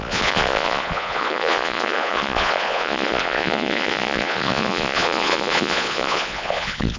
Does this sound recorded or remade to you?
remade